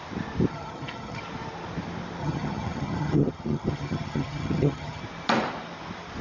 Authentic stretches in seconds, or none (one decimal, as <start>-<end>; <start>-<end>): 0.0-0.5; 1.2-2.2; 5.0-6.2